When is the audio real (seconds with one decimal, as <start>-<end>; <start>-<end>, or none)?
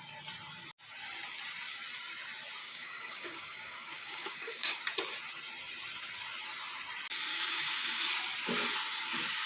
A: 0.0-2.6; 4.8-7.3; 8.0-9.5